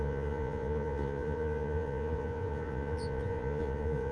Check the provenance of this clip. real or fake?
fake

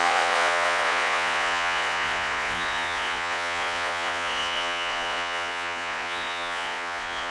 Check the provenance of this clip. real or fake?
fake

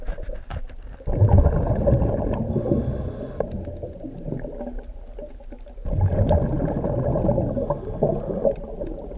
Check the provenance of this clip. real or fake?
real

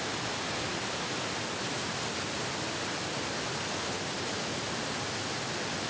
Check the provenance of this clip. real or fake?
real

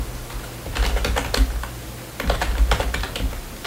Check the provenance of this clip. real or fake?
real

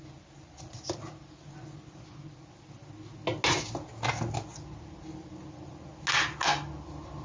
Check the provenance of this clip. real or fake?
real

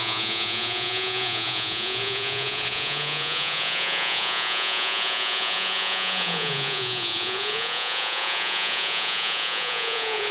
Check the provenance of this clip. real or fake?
fake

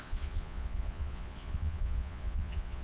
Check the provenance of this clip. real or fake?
fake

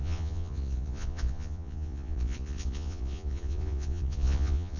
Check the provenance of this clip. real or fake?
fake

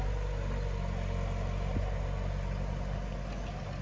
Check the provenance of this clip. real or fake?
real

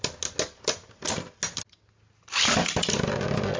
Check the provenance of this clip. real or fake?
real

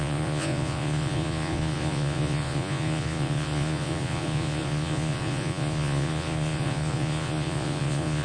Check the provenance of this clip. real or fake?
fake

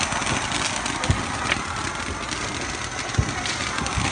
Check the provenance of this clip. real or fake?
real